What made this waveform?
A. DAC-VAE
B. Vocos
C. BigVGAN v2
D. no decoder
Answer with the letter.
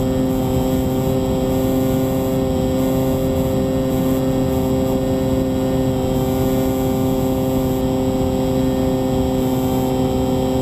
D